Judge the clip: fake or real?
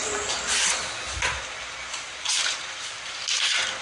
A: real